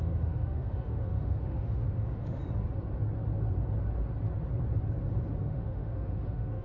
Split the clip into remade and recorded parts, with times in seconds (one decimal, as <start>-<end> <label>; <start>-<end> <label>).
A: 0.0-2.4 remade; 2.4-5.4 recorded; 5.4-6.6 remade